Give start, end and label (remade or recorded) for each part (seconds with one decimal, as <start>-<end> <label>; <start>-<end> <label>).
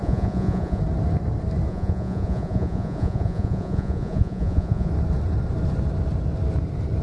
0.0-0.8 remade; 0.8-1.7 recorded; 1.7-4.9 remade; 4.9-7.0 recorded